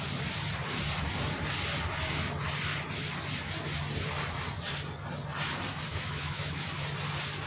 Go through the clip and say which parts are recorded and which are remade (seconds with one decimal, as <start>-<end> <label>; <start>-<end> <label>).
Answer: 0.0-5.9 recorded; 5.9-6.6 remade; 6.6-7.5 recorded